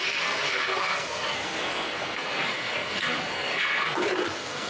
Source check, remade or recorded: remade